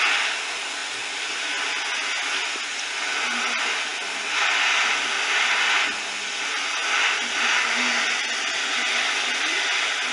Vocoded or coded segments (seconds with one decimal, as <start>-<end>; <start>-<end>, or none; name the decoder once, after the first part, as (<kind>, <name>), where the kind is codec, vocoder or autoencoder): none